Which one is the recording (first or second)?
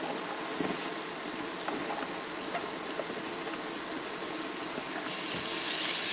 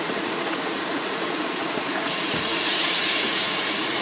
first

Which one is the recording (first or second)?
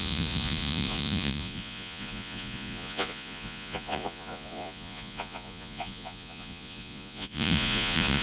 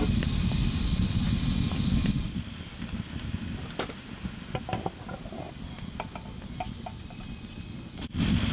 second